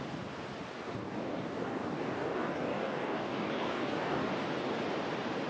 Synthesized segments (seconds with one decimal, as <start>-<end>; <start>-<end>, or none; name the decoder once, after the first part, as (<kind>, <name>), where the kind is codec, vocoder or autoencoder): 1.0-4.3 (codec, DAC)